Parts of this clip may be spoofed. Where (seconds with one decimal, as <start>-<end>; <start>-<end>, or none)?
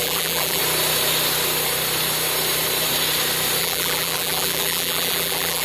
0.0-0.6; 3.6-5.6